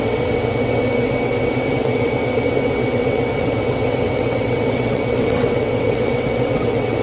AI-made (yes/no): yes